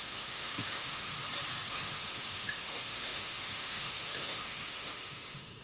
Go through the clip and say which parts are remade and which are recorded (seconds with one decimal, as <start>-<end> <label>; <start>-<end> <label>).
0.0-1.1 remade; 1.1-1.7 recorded; 1.7-5.6 remade